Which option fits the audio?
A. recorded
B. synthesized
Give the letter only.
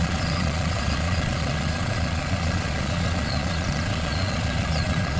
B